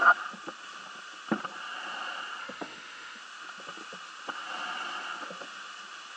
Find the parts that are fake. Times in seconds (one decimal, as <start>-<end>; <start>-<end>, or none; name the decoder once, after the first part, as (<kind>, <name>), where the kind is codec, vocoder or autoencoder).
2.4-3.2 (autoencoder, DAC-VAE)